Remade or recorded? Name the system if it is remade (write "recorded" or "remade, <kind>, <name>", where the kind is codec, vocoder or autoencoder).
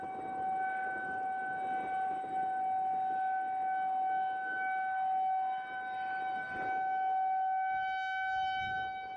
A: recorded